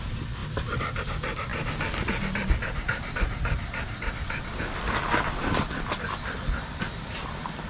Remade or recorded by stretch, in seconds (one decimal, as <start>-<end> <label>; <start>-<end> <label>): 0.0-7.7 recorded